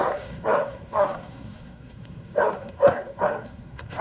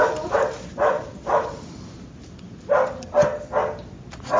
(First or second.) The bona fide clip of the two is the second